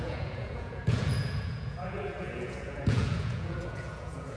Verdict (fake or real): fake